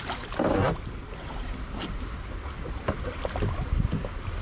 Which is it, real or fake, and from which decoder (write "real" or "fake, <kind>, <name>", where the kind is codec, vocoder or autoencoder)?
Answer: real